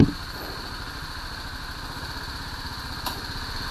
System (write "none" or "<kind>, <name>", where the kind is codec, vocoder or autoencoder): none